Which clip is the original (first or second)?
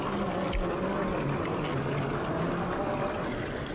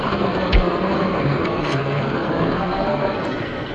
first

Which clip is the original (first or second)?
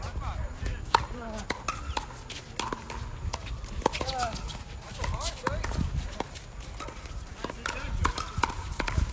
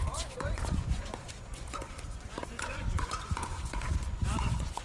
first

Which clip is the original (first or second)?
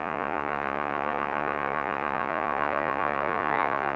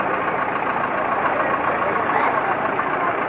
second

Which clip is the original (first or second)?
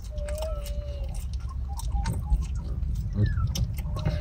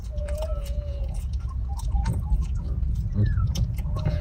first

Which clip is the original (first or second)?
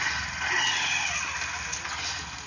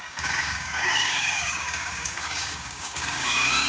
first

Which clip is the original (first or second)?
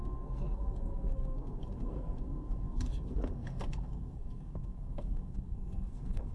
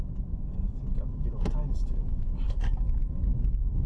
second